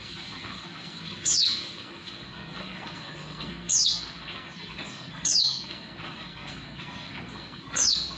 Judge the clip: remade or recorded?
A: remade